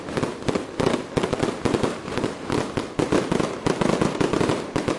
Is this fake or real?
real